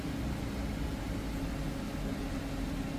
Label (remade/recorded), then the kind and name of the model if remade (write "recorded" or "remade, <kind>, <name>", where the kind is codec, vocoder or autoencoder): recorded